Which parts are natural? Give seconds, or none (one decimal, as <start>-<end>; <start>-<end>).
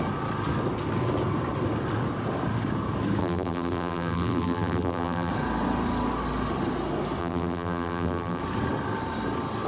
0.0-3.2; 5.3-7.2; 8.4-9.7